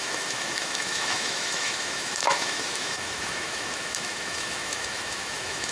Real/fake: fake